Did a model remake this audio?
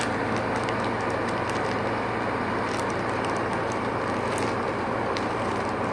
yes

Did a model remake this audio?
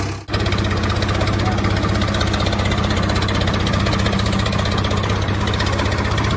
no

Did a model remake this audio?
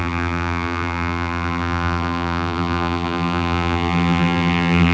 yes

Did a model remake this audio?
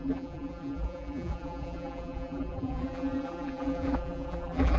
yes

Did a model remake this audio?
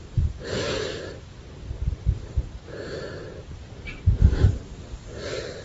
yes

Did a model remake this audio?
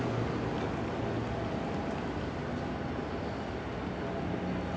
no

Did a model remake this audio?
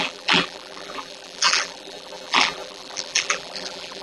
yes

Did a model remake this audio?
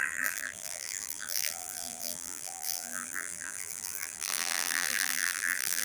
yes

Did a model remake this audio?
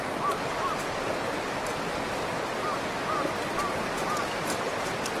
no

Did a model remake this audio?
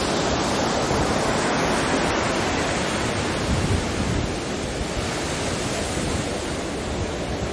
no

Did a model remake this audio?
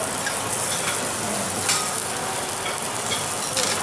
no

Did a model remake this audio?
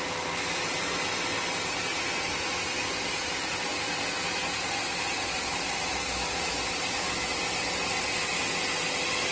no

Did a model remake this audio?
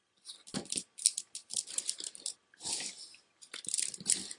no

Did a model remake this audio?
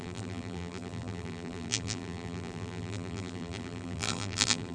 yes